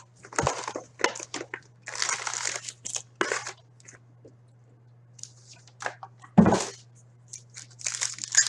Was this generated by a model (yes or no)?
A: no